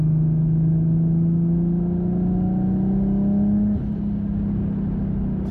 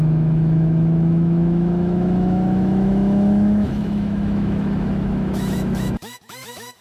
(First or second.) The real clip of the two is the first